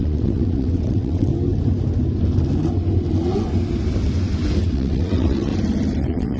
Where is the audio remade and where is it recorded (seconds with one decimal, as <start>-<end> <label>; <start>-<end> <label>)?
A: 0.0-1.3 remade; 1.3-4.6 recorded; 4.6-5.5 remade; 5.5-6.0 recorded; 6.0-6.4 remade